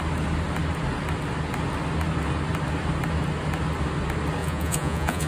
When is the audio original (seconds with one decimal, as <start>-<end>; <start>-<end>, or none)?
0.0-4.4